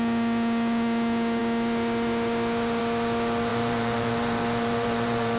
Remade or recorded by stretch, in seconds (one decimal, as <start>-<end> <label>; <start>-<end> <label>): 0.0-3.5 recorded; 3.5-5.4 remade